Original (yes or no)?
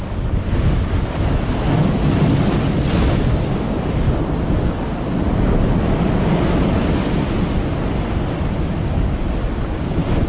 yes